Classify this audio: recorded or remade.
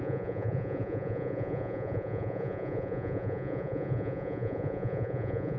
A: remade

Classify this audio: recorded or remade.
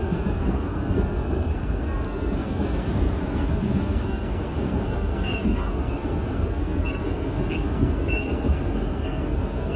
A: remade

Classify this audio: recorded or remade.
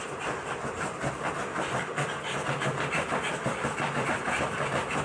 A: recorded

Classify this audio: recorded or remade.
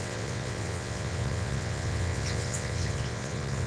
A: remade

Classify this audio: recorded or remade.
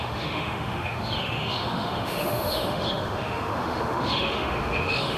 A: remade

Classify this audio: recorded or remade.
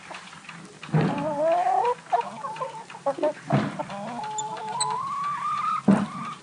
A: recorded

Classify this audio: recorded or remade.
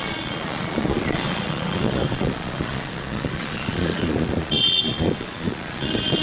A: remade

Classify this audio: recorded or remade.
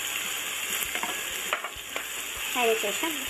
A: recorded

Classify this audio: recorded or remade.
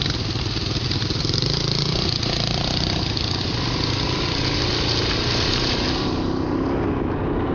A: recorded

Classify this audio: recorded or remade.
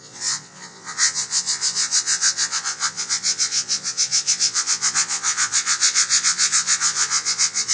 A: remade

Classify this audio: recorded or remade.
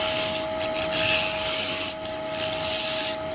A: recorded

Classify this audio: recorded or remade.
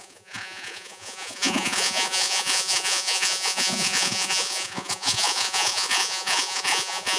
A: remade